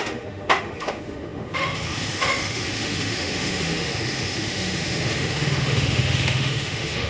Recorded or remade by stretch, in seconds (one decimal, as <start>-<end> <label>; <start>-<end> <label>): 0.0-7.1 remade